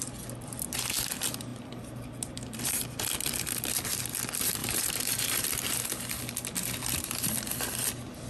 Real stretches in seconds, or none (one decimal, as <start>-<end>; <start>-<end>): 0.0-4.6; 5.5-8.3